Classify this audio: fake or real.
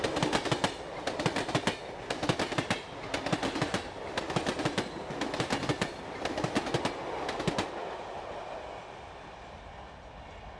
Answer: real